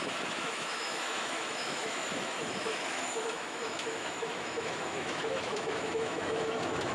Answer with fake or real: fake